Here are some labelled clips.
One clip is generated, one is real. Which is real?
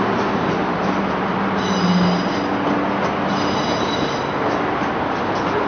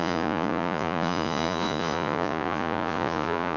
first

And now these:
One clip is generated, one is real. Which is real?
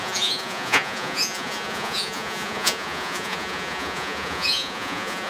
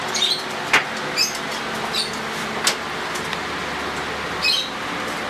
second